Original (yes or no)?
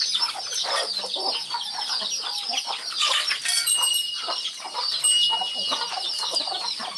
yes